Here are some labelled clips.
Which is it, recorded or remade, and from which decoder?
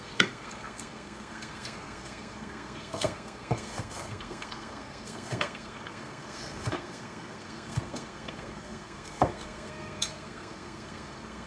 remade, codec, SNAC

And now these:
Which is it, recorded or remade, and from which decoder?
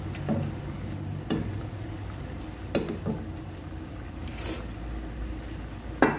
recorded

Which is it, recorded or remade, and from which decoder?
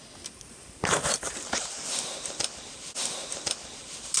recorded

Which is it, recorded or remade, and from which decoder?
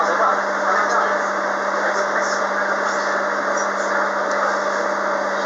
recorded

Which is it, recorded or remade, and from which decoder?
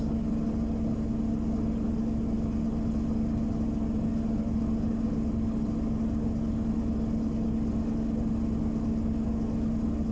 recorded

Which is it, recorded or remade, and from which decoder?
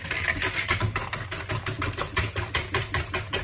recorded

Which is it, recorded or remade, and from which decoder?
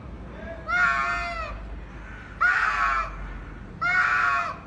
recorded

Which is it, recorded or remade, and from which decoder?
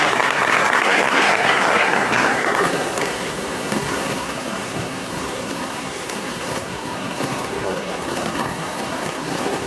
remade, codec, SNAC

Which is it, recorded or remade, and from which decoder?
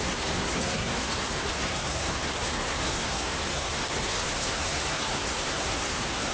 remade, codec, SNAC